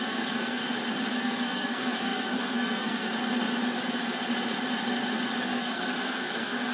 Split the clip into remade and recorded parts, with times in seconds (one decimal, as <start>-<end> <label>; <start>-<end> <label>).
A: 0.0-0.6 remade; 0.6-1.1 recorded; 1.1-3.1 remade; 3.1-5.4 recorded; 5.4-6.7 remade